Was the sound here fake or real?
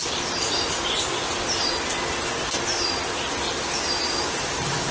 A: real